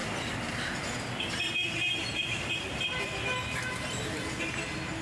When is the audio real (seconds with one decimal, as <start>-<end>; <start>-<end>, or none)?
3.0-3.6; 4.2-5.0